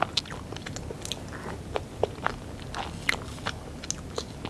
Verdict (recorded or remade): recorded